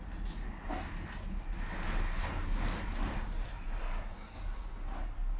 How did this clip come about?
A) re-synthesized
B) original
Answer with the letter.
B